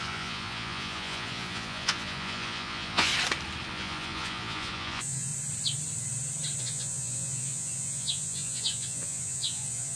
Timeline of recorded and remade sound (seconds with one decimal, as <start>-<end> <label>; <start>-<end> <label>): 0.0-3.1 remade; 3.1-3.7 recorded; 3.7-5.3 remade; 5.3-6.6 recorded; 6.6-10.0 remade